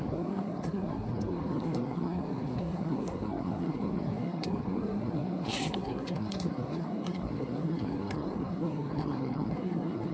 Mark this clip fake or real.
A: fake